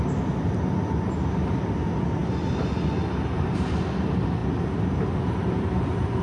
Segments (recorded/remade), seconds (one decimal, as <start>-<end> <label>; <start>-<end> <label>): 0.0-6.2 recorded

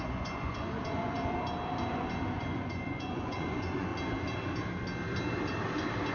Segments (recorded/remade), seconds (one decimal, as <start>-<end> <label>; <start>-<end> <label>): 0.0-1.2 remade; 1.2-2.3 recorded; 2.3-3.9 remade; 3.9-6.1 recorded

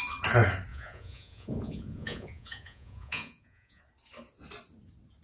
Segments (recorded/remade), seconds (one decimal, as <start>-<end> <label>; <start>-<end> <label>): 0.0-0.7 recorded; 0.7-3.8 remade; 3.8-5.2 recorded